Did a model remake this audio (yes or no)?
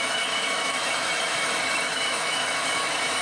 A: yes